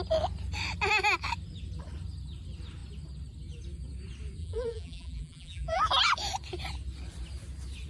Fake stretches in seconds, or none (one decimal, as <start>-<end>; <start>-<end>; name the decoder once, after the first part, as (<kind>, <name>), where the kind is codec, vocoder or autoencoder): 4.4-5.8 (vocoder, BigVGAN v2)